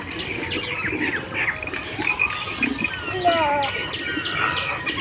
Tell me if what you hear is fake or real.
real